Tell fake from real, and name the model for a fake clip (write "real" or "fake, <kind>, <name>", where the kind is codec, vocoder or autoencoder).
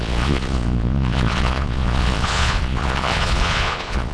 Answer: fake, vocoder, Vocos